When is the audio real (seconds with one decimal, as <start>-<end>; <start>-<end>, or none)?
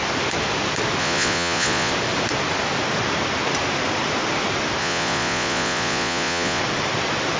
0.0-1.0; 1.9-4.8; 6.6-7.4